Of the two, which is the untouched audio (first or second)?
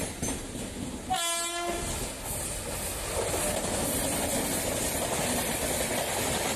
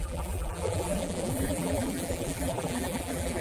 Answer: first